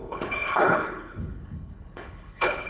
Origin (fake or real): fake